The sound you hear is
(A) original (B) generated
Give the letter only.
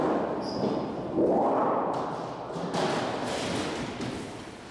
A